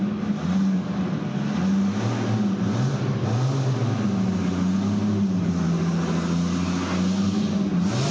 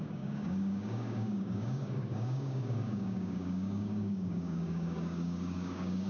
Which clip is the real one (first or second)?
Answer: first